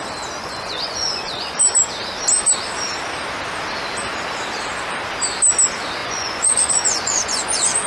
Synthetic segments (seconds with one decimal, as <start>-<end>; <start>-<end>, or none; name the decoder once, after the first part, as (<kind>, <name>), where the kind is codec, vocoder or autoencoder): 0.4-1.5 (vocoder, Vocos); 6.0-7.9